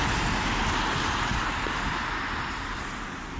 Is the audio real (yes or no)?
yes